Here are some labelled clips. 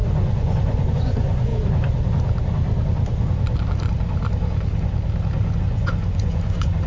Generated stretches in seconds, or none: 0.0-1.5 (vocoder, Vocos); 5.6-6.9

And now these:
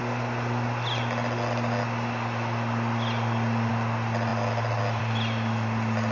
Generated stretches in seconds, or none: none

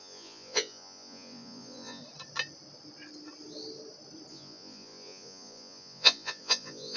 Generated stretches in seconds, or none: 0.0-2.0 (vocoder, Vocos); 4.3-7.0

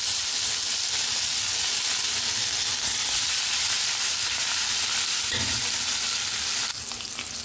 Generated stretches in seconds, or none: none

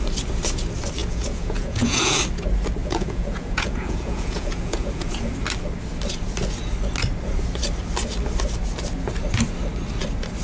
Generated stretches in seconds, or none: 1.0-2.2 (vocoder, Vocos); 2.8-5.2

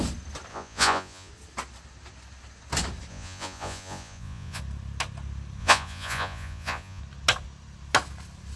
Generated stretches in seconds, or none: 0.5-1.3 (vocoder, Vocos); 3.1-4.6; 5.6-7.0

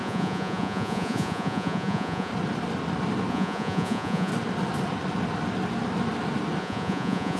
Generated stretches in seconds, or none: 0.0-2.3 (vocoder, Vocos); 3.3-4.3; 6.6-7.4